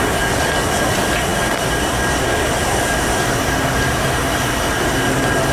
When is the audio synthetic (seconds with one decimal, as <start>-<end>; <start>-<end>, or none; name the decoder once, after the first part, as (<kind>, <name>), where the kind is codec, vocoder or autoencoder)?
none